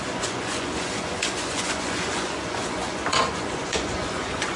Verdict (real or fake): fake